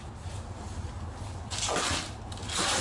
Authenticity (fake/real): real